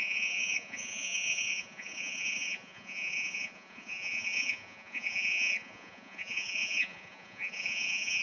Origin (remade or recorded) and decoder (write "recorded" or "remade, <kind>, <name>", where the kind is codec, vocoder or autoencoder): remade, vocoder, Vocos